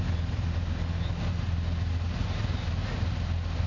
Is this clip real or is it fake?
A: real